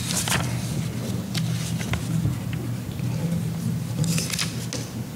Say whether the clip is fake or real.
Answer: real